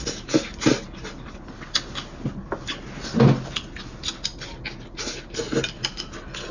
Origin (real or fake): real